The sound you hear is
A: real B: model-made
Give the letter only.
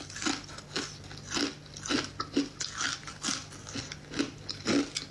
A